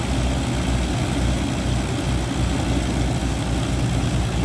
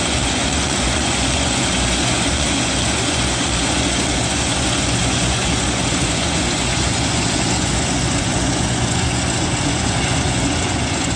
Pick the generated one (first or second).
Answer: second